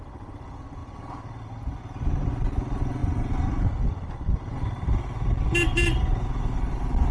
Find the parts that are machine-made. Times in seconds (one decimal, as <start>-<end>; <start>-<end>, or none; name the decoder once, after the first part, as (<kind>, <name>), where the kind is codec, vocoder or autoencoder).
none